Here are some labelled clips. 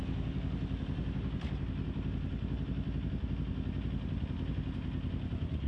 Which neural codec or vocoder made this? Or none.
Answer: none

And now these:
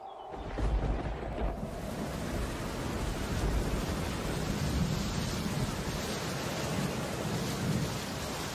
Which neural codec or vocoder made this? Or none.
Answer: none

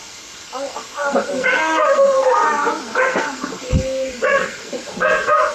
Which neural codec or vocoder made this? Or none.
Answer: codec, SNAC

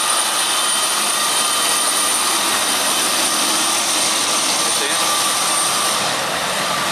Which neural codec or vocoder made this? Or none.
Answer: vocoder, BigVGAN v2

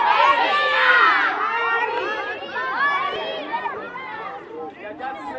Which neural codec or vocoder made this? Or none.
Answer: vocoder, BigVGAN v2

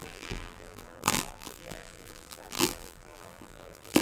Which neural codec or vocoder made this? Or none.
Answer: vocoder, BigVGAN v2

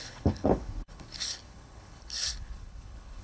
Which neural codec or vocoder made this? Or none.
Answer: codec, HILCodec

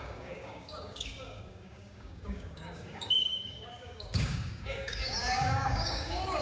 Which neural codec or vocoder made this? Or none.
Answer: codec, DAC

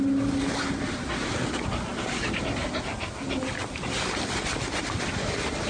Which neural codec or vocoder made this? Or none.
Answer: none